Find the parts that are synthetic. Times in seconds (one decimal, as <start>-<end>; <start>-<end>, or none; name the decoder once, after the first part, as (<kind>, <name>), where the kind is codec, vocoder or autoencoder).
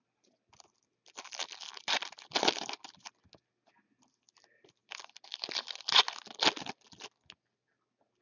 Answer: none